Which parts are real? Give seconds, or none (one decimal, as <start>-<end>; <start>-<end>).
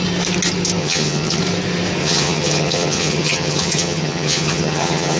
0.0-0.8; 1.4-2.0